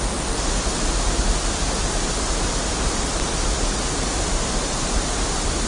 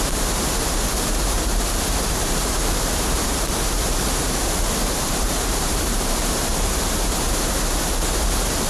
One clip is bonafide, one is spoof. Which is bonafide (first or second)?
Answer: first